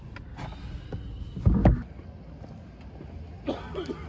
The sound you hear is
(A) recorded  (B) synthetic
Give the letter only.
A